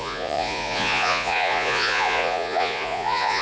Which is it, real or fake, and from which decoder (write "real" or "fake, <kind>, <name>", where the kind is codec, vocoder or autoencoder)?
fake, vocoder, Vocos